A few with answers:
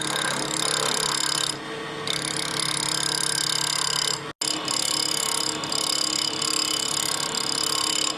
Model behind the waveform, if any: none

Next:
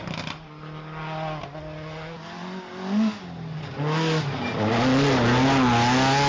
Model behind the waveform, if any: none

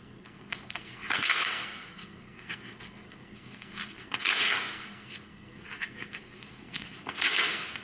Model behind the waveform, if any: codec, SNAC